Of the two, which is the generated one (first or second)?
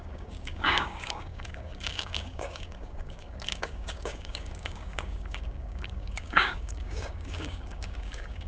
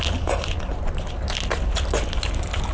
first